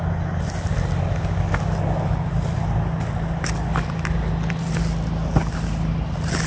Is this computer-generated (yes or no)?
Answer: no